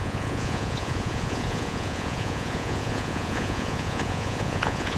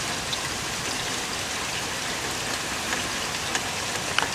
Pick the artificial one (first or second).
first